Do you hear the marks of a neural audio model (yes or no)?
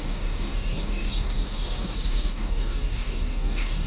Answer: yes